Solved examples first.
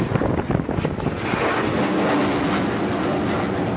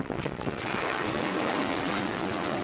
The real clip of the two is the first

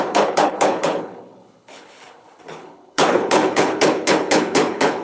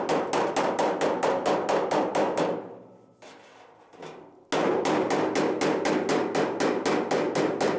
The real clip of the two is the second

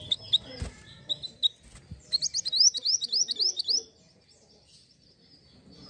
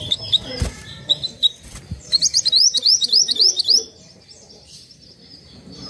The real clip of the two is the first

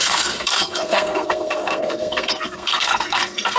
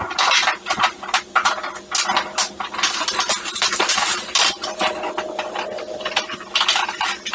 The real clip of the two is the second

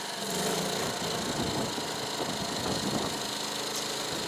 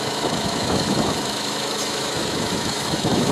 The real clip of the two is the first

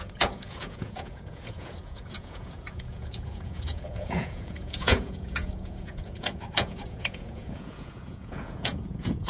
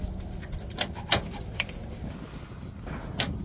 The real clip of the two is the second